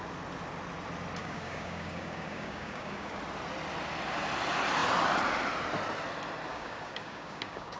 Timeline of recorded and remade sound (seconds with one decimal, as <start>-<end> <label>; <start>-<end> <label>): 0.0-1.2 recorded; 1.2-3.2 remade; 3.2-6.5 recorded; 6.5-7.8 remade